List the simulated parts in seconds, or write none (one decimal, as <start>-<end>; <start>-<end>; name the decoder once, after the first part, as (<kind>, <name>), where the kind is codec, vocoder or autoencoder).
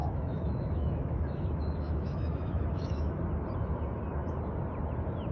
0.0-3.2 (autoencoder, DAC-VAE)